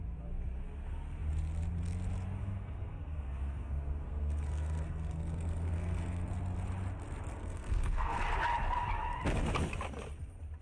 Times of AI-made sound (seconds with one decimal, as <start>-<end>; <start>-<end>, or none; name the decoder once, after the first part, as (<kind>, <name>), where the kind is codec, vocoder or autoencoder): 2.4-6.3 (codec, SNAC); 7.4-8.2